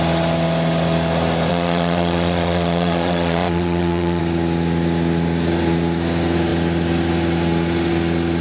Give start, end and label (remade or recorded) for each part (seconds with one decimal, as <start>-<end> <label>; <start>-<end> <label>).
0.0-1.5 recorded; 1.5-4.2 remade; 4.2-8.4 recorded